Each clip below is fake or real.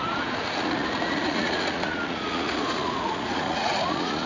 fake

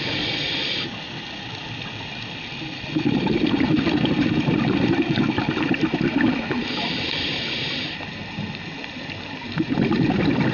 fake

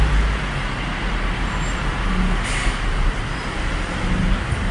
real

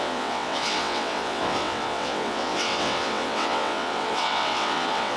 fake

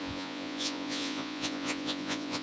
fake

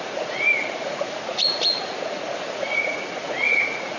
fake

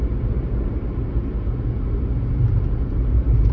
real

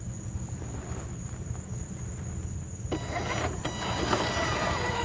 real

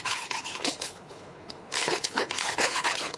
fake